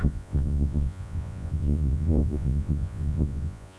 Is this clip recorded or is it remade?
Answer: remade